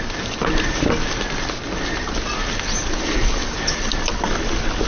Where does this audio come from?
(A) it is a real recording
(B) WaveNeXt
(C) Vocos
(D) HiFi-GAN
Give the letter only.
A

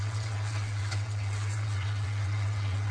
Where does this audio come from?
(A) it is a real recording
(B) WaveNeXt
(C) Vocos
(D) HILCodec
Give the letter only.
B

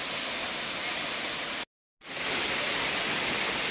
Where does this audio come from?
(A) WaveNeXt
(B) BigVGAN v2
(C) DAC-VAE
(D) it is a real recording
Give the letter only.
D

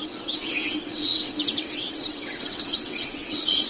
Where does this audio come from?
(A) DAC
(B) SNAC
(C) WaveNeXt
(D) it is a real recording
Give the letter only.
C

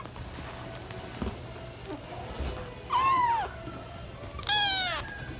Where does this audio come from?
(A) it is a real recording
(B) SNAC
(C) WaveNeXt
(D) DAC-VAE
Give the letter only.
A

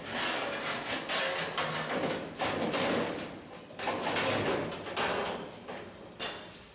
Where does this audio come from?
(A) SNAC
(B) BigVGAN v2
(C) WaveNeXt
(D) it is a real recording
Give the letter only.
D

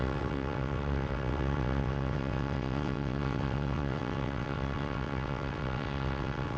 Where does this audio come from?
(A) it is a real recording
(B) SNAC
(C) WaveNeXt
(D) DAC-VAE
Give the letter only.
C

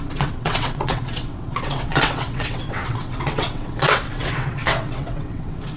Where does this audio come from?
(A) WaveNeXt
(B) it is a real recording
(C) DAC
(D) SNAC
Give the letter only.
A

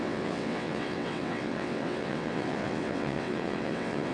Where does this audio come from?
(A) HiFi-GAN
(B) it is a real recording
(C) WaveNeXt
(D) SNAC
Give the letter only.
C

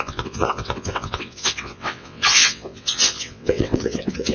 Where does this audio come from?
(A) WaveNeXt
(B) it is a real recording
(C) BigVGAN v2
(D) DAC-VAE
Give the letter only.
A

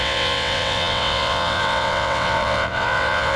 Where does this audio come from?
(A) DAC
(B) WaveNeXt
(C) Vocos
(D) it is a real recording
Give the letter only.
B